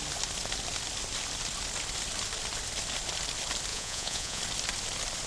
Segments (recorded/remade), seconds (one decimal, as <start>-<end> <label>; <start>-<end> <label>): 0.0-3.7 recorded; 3.7-4.4 remade; 4.4-5.3 recorded